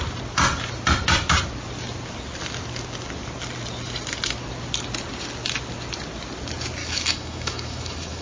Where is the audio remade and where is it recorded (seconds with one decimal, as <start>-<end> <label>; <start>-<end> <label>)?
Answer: 0.0-6.8 recorded; 6.8-8.2 remade

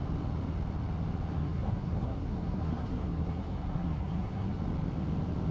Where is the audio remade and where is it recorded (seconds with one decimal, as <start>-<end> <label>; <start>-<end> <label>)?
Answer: 0.0-1.3 recorded; 1.3-4.6 remade; 4.6-5.5 recorded

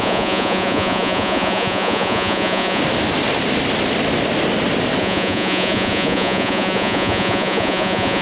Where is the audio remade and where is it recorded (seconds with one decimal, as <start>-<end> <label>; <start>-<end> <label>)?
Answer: 0.0-2.8 remade; 2.8-5.0 recorded; 5.0-8.2 remade

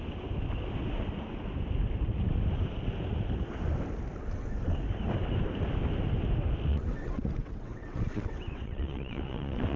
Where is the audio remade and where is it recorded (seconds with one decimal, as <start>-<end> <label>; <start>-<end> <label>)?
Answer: 0.0-6.7 recorded; 6.7-9.8 remade

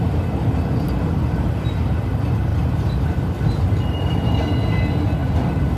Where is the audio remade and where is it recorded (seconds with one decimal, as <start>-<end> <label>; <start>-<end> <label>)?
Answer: 0.0-2.5 recorded; 2.5-3.2 remade; 3.2-5.8 recorded

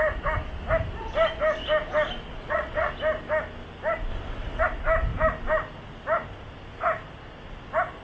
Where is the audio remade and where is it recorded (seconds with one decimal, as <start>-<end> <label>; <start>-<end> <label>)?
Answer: 0.0-2.3 recorded; 2.3-2.9 remade; 2.9-4.1 recorded; 4.1-4.6 remade; 4.6-8.0 recorded